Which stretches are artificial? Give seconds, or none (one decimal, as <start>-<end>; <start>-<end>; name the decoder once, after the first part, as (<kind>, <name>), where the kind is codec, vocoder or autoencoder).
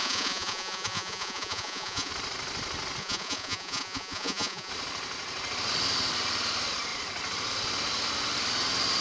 0.0-2.1 (vocoder, Vocos); 3.0-4.7